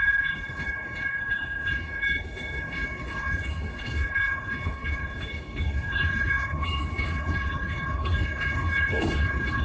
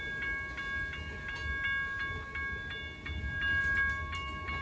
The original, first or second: second